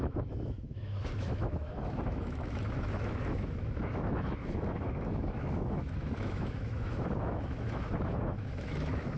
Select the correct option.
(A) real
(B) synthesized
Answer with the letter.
B